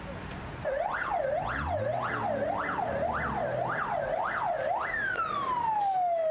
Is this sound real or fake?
real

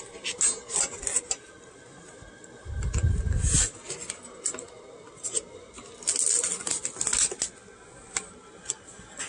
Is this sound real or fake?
real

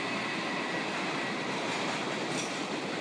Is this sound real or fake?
real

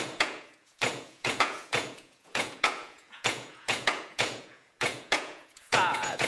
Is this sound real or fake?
fake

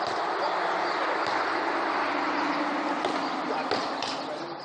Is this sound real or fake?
real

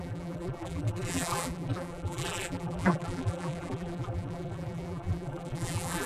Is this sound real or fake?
fake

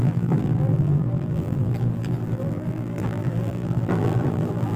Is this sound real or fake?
fake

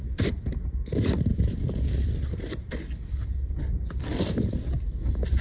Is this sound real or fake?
fake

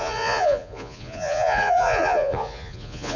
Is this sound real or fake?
fake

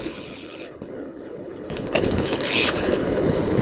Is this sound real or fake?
fake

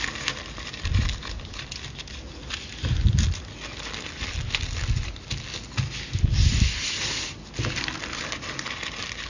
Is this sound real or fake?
real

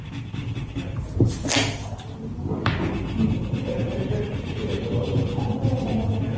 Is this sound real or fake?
real